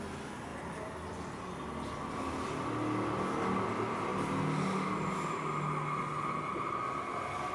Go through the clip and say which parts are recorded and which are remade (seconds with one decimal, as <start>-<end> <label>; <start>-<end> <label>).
0.0-0.5 recorded; 0.5-2.1 remade; 2.1-7.5 recorded